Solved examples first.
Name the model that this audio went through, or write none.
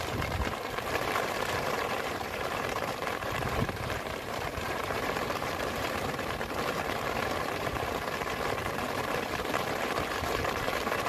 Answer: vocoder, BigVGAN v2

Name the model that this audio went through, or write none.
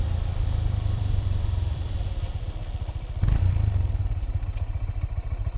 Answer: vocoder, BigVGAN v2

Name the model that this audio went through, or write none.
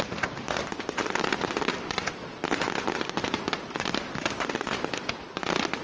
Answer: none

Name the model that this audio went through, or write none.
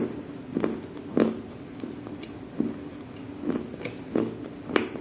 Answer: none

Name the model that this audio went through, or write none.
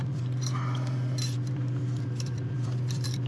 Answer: vocoder, BigVGAN v2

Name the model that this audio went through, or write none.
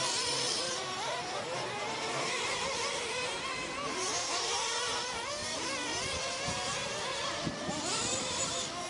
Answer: vocoder, BigVGAN v2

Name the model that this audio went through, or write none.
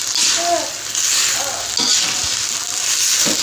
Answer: none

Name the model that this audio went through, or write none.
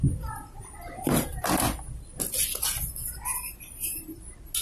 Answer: none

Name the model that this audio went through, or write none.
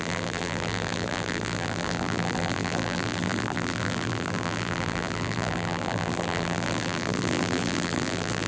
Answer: vocoder, BigVGAN v2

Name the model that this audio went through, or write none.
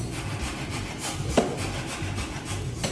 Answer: vocoder, BigVGAN v2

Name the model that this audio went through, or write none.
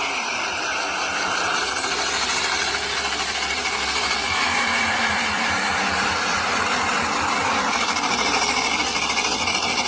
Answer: vocoder, BigVGAN v2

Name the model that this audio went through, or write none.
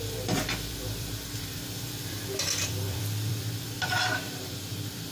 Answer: vocoder, BigVGAN v2